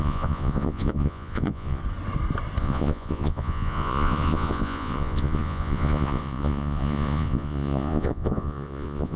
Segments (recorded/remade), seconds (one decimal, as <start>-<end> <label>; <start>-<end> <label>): 0.0-1.8 remade; 1.8-2.6 recorded; 2.6-9.2 remade